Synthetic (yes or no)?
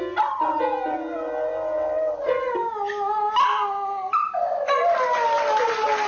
no